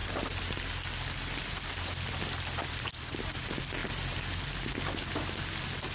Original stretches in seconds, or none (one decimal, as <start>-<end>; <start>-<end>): 0.0-5.9